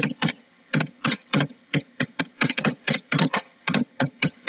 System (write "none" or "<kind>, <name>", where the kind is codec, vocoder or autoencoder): vocoder, HiFi-GAN